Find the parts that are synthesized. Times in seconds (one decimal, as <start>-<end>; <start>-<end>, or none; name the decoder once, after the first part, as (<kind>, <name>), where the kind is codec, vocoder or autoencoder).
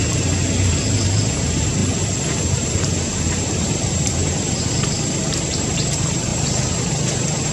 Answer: 0.0-1.8 (vocoder, BigVGAN v2); 2.4-7.5